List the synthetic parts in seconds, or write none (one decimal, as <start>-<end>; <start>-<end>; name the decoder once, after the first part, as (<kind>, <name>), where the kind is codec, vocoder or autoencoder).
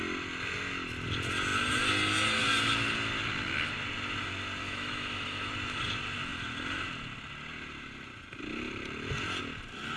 4.6-5.5 (autoencoder, DAC-VAE)